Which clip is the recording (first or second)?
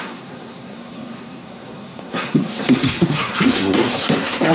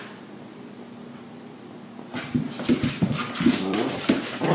second